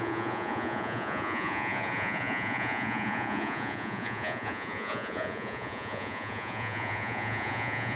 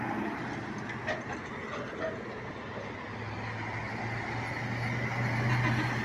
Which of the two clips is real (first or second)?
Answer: second